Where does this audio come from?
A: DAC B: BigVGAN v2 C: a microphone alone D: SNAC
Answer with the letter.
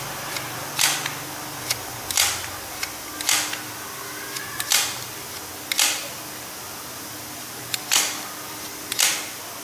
C